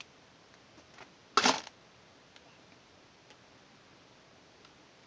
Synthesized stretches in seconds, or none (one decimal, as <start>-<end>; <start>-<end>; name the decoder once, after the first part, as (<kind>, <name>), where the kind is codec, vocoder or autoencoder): none